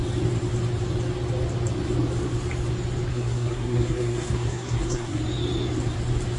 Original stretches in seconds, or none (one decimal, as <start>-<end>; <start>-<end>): 0.0-3.1; 5.2-6.4